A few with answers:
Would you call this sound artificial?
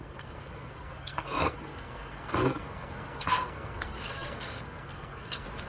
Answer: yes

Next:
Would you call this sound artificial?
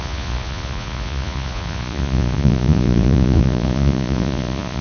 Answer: yes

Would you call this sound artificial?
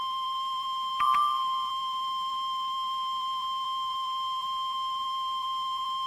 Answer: yes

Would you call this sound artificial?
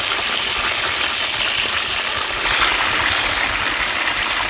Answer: no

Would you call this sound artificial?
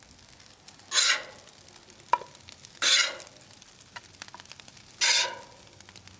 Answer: no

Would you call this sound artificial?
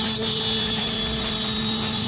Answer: no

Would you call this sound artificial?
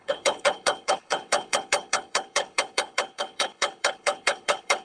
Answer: yes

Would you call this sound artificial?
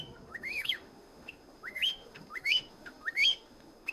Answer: yes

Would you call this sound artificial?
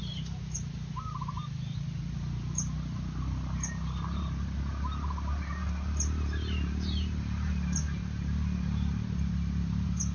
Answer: no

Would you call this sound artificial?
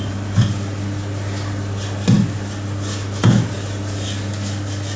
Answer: no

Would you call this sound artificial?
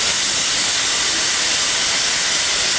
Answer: no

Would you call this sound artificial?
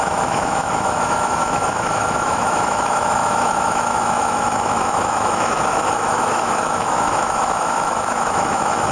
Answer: yes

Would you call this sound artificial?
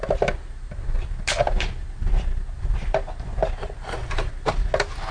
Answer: no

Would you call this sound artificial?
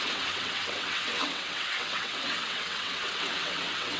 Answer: yes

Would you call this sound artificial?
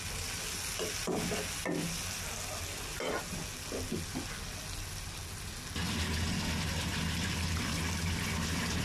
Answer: no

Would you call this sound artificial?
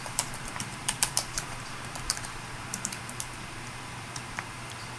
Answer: yes